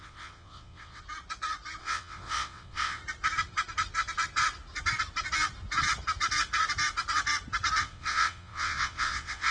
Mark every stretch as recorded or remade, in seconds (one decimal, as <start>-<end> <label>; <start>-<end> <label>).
0.0-1.0 remade; 1.0-1.8 recorded; 1.8-3.0 remade; 3.0-7.8 recorded; 7.8-9.5 remade